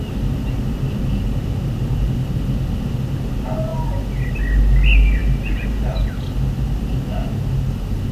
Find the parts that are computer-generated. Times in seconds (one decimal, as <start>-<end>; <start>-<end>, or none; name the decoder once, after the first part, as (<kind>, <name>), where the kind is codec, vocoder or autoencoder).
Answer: none